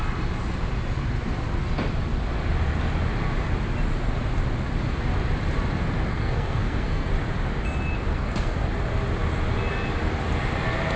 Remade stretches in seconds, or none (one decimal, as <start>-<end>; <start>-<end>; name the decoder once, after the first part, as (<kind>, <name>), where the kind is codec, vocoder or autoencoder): 6.1-7.1 (codec, SNAC); 8.1-8.7